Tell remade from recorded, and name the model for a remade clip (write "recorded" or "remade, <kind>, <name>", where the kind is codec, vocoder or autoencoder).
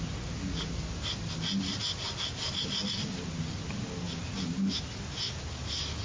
recorded